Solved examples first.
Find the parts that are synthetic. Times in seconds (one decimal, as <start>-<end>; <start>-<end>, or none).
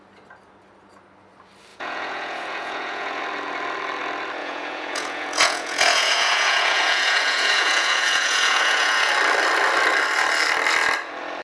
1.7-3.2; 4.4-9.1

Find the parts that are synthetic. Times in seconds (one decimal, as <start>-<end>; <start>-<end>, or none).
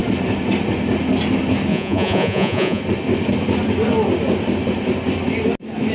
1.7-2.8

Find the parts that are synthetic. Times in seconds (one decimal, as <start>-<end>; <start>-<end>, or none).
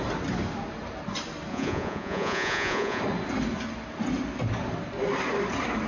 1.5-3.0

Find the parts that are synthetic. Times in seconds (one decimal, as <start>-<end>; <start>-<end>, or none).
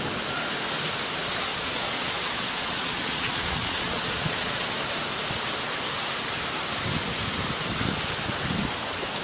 1.5-4.7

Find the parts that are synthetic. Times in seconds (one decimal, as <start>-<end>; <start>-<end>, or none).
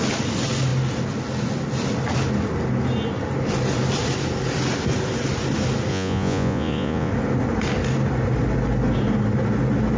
5.9-7.1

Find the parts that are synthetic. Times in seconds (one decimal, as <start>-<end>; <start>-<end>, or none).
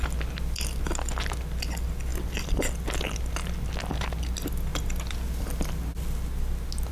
none